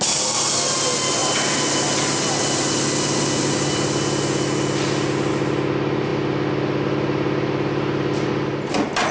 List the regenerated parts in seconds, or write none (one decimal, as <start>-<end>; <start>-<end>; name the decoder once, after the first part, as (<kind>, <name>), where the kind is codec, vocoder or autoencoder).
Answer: none